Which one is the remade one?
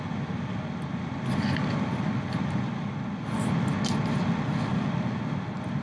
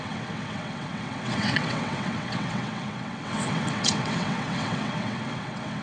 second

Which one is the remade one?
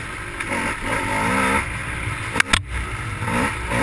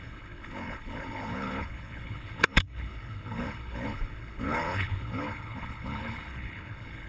second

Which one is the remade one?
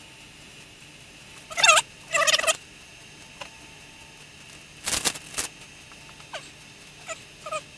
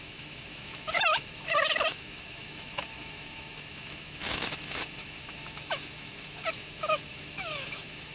second